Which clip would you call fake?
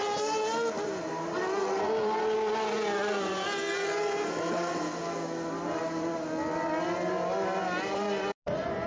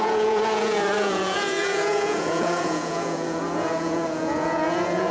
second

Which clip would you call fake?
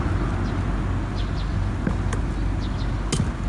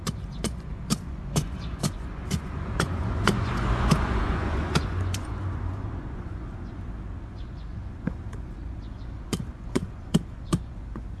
second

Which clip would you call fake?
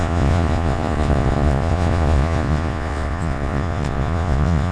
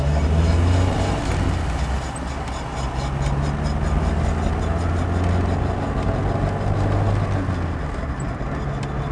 first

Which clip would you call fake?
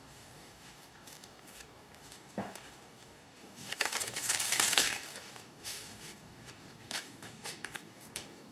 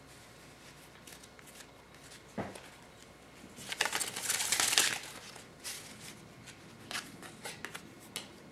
first